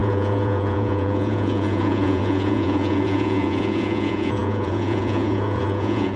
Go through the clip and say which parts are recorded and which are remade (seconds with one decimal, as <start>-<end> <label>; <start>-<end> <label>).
0.0-6.2 remade